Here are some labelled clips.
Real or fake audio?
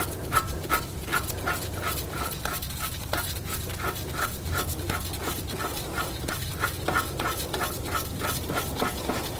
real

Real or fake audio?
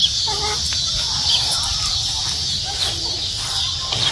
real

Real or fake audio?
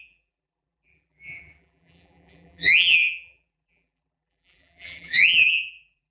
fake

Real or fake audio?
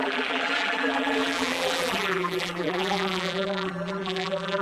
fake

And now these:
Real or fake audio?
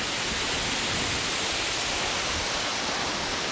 real